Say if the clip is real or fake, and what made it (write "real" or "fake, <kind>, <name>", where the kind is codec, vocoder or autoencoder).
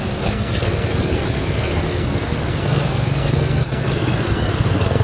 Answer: fake, codec, SNAC